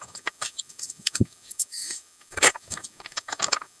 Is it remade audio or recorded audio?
remade